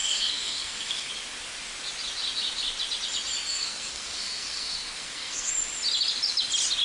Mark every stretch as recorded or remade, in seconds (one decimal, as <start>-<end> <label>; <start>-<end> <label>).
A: 0.0-1.1 remade; 1.1-3.5 recorded; 3.5-5.5 remade; 5.5-6.8 recorded